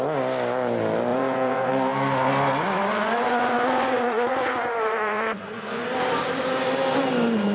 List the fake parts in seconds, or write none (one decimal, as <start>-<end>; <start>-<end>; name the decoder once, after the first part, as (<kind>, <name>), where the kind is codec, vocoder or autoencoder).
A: 1.1-1.7 (vocoder, Vocos); 2.8-5.8